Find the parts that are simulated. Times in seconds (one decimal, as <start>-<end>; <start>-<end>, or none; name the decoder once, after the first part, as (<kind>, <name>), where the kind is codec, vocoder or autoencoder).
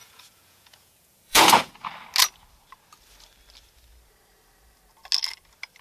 0.0-1.7 (vocoder, Vocos)